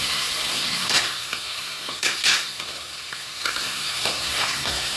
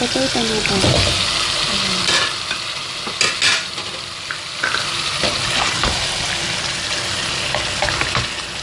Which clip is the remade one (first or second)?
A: first